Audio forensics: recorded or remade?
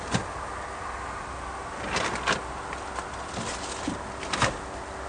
recorded